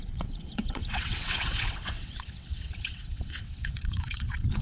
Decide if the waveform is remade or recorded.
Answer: remade